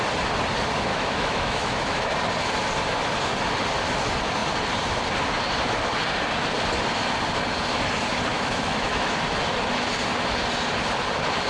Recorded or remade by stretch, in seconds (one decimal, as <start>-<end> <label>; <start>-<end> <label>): 0.0-0.9 recorded; 0.9-2.0 remade; 2.0-8.3 recorded; 8.3-9.1 remade; 9.1-11.5 recorded